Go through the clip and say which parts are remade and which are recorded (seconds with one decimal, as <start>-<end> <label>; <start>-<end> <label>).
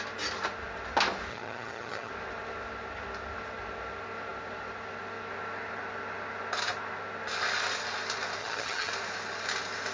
0.0-1.3 recorded; 1.3-2.1 remade; 2.1-8.4 recorded; 8.4-8.9 remade; 8.9-9.9 recorded